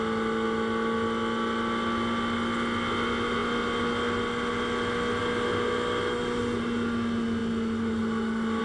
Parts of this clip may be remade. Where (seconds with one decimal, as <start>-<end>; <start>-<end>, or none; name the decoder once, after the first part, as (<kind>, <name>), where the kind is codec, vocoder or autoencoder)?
none